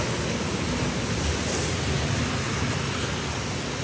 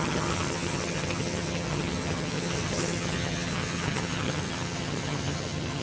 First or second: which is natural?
first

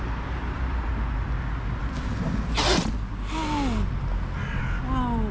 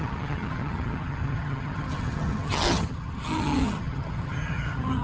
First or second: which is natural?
first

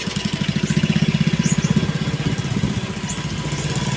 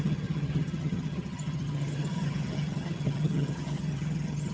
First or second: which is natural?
first